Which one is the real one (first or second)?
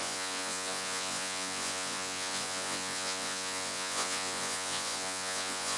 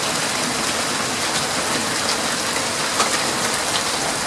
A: second